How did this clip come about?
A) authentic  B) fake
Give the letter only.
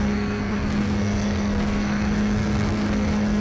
B